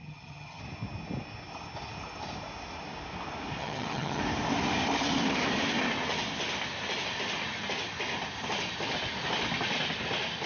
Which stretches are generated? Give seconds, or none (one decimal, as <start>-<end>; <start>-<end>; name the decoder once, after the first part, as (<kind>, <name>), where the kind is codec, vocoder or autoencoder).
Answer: 0.0-0.6 (vocoder, HiFi-GAN); 3.6-4.2